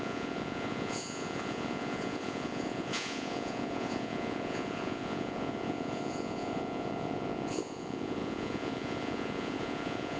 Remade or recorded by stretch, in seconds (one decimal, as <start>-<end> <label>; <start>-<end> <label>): 0.0-10.2 remade